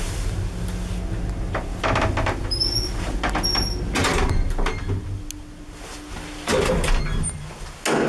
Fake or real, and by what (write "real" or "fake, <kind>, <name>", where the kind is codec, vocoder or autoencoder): real